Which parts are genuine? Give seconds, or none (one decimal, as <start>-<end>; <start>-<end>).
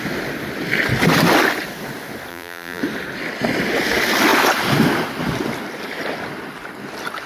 0.0-2.3; 2.8-7.3